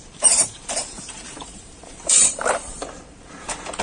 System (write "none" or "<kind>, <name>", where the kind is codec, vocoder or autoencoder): vocoder, BigVGAN v2